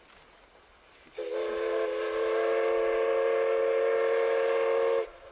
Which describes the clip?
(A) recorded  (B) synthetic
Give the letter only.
A